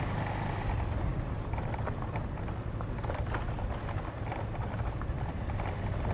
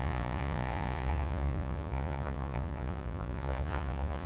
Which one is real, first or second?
first